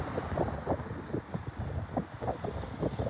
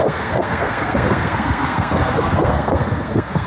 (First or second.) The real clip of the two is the first